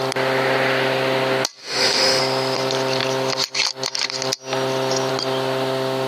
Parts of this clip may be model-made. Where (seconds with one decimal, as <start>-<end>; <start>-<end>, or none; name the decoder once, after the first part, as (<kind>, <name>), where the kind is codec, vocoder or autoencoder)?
1.6-2.2 (autoencoder, DAC-VAE)